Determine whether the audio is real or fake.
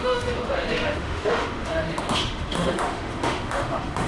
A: fake